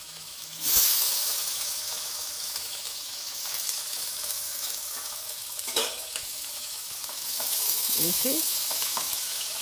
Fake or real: fake